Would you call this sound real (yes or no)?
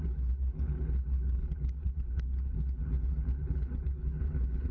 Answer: no